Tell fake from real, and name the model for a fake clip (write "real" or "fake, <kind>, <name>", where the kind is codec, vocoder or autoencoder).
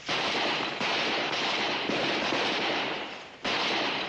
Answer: fake, vocoder, BigVGAN v2